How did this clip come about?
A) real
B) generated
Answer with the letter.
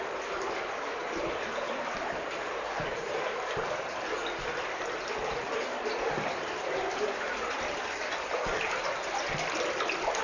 B